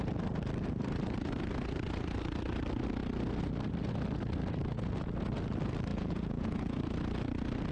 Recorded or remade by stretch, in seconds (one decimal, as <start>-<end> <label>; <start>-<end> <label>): 0.0-5.9 recorded; 5.9-6.8 remade; 6.8-7.7 recorded